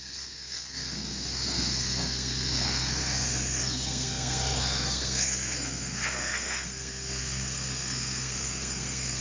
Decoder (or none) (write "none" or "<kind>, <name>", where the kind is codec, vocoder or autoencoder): codec, SNAC